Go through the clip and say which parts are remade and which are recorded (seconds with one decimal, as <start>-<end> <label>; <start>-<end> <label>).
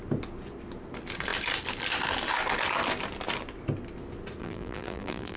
0.0-4.4 recorded; 4.4-5.4 remade